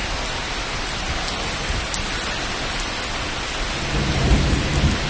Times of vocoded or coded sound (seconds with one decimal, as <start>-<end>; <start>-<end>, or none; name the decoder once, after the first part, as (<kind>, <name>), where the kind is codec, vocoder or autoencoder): none